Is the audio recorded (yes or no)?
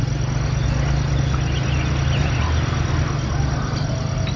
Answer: yes